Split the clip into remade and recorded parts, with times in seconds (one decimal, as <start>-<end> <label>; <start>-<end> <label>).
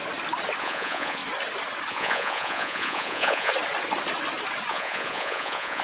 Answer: 0.0-0.6 recorded; 0.6-1.2 remade; 1.2-1.9 recorded; 1.9-3.5 remade; 3.5-4.7 recorded; 4.7-5.8 remade